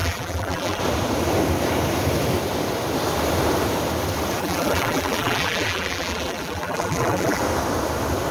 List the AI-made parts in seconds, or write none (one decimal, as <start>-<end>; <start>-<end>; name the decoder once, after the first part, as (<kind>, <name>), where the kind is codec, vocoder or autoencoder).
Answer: 0.0-0.8 (vocoder, BigVGAN v2); 4.4-7.4